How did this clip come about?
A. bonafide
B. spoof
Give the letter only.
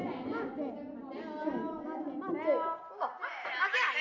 A